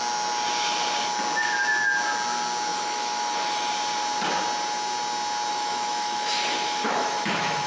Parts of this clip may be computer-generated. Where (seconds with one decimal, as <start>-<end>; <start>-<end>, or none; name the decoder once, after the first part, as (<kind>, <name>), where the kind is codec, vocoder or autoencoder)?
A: 2.7-3.7 (autoencoder, DAC-VAE); 5.5-7.7